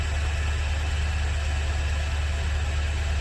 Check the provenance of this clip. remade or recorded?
recorded